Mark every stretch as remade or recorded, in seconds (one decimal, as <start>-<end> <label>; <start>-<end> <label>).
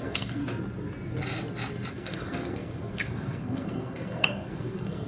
0.0-0.4 remade; 0.4-1.9 recorded; 1.9-5.1 remade